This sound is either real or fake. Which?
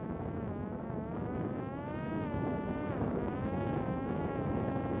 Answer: fake